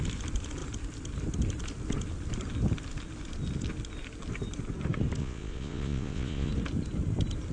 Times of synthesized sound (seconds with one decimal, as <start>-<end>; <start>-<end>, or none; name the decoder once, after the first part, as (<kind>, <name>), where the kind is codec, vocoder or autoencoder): 5.2-6.5 (vocoder, Vocos)